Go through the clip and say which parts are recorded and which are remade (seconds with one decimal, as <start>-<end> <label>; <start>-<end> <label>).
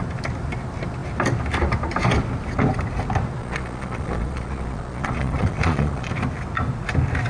0.0-3.4 recorded; 3.4-6.1 remade; 6.1-7.3 recorded